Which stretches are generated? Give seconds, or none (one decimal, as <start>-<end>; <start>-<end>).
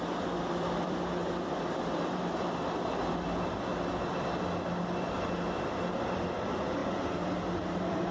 0.0-3.7; 5.7-6.8; 7.6-8.1